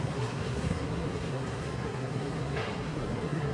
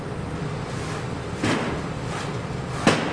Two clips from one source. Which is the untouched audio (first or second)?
second